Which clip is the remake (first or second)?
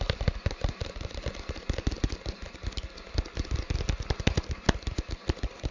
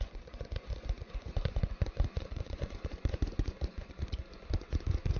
second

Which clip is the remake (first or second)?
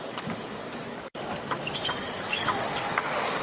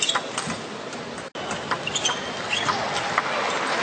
first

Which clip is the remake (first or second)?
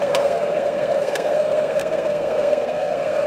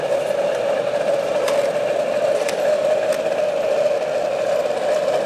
first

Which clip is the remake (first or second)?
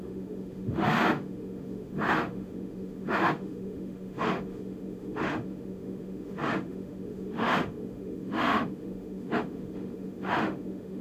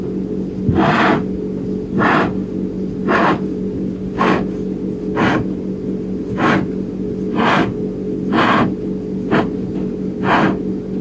first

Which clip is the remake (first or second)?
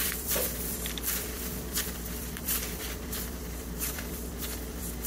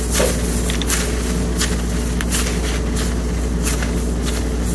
first